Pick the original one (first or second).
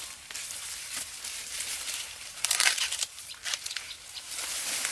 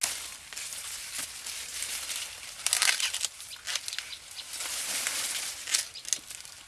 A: second